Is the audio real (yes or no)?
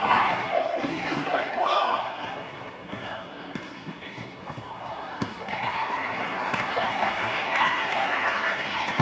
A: no